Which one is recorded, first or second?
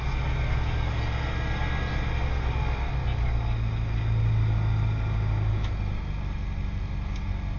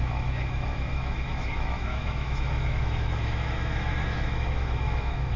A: first